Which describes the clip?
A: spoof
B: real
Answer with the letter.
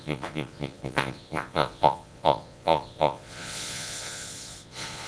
A